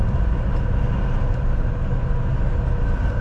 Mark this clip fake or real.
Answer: real